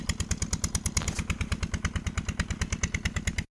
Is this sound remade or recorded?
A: recorded